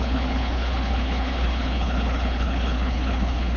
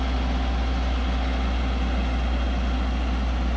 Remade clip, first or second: first